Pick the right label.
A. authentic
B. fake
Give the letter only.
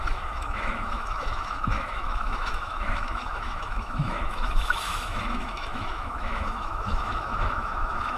B